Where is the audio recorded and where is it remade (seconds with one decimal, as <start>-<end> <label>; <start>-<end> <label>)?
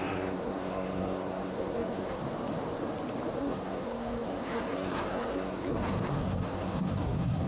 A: 0.0-2.2 remade; 2.2-3.4 recorded; 3.4-7.5 remade